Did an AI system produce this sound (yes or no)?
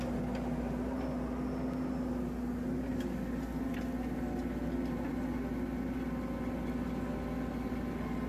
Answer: no